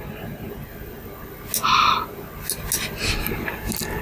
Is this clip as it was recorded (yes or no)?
yes